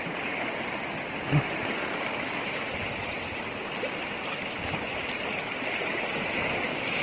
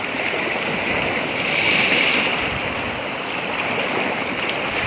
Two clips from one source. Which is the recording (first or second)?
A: first